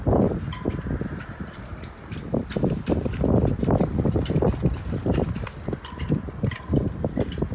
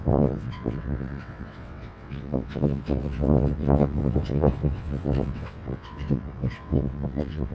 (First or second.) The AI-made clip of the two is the second